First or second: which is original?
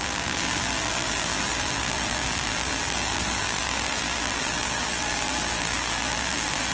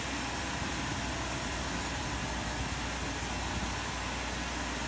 second